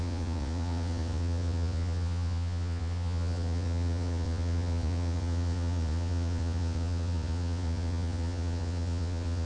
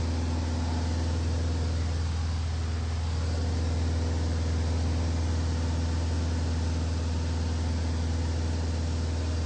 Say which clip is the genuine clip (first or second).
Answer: second